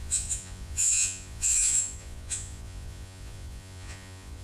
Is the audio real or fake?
fake